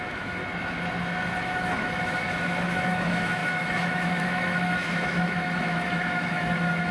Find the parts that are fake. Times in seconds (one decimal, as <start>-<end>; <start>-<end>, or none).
0.0-0.4; 1.4-6.9